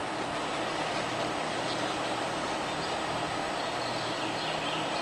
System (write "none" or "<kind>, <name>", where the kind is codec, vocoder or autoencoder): none